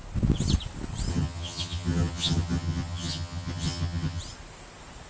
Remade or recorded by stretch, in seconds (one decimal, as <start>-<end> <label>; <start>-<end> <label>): 0.0-1.1 recorded; 1.1-4.2 remade; 4.2-5.1 recorded